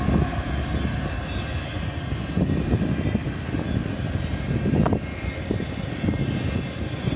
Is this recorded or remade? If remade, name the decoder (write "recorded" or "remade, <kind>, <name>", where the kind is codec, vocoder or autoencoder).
recorded